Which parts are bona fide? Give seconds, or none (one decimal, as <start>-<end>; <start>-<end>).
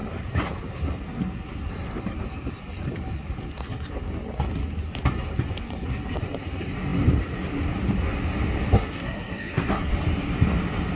0.0-8.7; 9.9-11.0